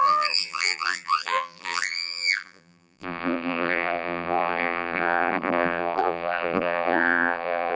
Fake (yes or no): yes